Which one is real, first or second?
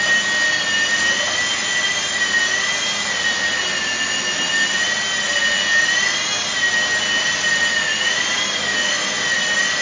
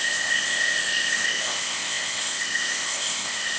first